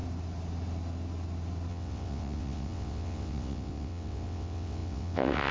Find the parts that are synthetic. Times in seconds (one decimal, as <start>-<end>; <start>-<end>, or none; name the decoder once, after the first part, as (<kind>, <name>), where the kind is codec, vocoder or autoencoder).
1.7-5.5 (vocoder, WaveNeXt)

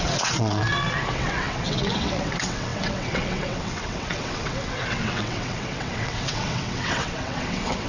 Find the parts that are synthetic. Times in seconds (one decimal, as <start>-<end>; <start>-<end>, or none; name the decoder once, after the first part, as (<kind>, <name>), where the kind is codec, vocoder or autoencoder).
0.0-0.6 (vocoder, WaveNeXt); 1.1-7.9

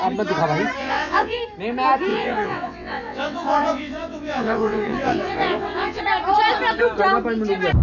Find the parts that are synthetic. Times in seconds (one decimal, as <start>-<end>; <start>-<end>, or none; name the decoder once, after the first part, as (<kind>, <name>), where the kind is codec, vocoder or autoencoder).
0.8-1.4 (vocoder, WaveNeXt); 2.1-6.0

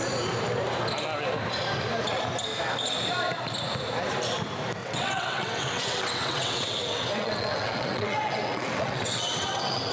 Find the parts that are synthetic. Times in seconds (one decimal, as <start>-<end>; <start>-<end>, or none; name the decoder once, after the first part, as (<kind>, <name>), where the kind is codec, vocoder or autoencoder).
4.8-9.9 (vocoder, WaveNeXt)

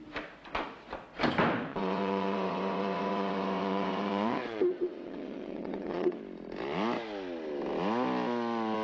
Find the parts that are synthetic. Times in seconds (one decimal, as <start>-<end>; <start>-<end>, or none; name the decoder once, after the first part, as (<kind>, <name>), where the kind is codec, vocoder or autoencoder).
1.7-6.2 (vocoder, WaveNeXt)

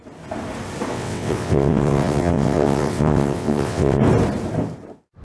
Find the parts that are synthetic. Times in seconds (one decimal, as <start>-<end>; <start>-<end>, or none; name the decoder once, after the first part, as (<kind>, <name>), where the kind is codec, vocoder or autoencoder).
0.9-4.0 (vocoder, WaveNeXt)

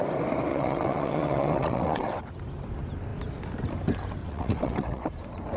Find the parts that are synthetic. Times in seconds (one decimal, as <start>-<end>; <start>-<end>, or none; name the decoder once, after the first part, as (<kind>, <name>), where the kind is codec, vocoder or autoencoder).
0.5-2.2 (vocoder, WaveNeXt); 4.2-5.1

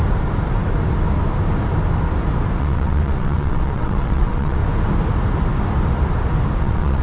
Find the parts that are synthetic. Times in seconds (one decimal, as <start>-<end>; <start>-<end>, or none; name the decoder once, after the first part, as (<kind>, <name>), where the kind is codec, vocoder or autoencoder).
2.6-4.6 (vocoder, WaveNeXt); 6.6-7.0